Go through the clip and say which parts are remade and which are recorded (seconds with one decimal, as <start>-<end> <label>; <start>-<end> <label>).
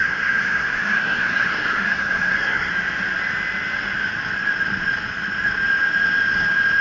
0.0-2.7 remade; 2.7-6.8 recorded